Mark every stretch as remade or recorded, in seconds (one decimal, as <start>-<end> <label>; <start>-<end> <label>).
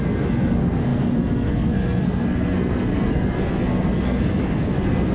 0.0-5.1 remade